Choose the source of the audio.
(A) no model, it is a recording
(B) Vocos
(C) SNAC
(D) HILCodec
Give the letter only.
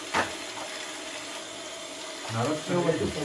A